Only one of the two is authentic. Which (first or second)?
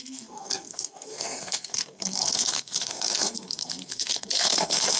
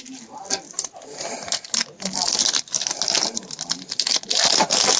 second